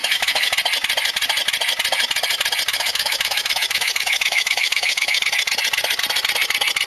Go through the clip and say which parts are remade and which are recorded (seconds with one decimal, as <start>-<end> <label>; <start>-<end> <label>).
0.0-0.5 remade; 0.5-2.7 recorded; 2.7-5.2 remade; 5.2-6.9 recorded

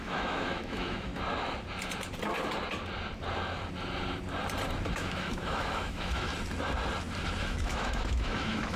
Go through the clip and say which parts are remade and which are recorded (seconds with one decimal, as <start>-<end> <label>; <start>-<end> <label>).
0.0-1.1 remade; 1.1-4.9 recorded; 4.9-6.3 remade; 6.3-7.4 recorded; 7.4-8.8 remade

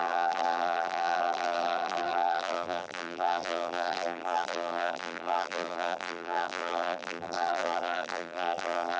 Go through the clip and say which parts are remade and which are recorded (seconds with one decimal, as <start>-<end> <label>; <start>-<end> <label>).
0.0-9.0 remade

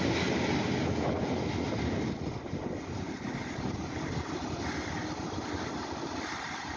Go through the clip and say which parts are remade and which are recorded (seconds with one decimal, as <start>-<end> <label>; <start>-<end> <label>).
0.0-6.8 recorded

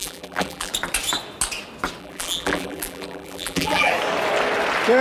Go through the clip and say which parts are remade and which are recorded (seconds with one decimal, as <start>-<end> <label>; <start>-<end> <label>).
0.0-0.7 remade; 0.7-2.0 recorded; 2.0-3.9 remade; 3.9-5.0 recorded

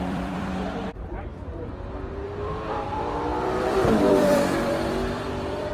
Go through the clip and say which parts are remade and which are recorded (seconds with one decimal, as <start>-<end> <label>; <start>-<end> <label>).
0.0-1.3 remade; 1.3-2.1 recorded; 2.1-5.7 remade

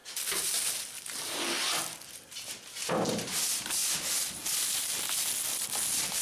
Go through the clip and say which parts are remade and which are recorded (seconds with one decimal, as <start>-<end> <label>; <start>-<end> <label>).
0.0-6.2 recorded

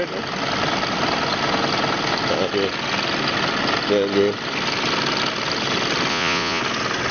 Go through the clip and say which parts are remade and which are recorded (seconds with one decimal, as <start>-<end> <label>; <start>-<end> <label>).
0.0-6.1 recorded; 6.1-6.6 remade; 6.6-7.1 recorded